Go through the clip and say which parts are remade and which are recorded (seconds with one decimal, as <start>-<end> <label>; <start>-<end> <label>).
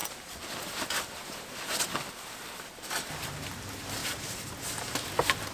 0.0-3.3 remade; 3.3-4.0 recorded; 4.0-4.6 remade; 4.6-5.5 recorded